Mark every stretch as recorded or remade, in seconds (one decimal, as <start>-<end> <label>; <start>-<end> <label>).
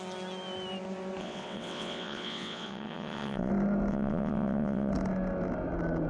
0.0-1.2 recorded; 1.2-3.5 remade; 3.5-3.9 recorded; 3.9-4.9 remade; 4.9-6.1 recorded